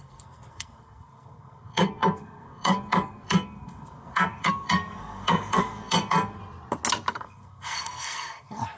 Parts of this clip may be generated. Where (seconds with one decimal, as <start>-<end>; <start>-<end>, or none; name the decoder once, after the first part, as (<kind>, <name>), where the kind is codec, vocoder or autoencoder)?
0.0-6.4 (codec, SNAC); 7.1-8.8